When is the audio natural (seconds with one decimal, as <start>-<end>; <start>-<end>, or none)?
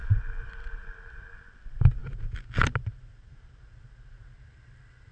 0.0-5.1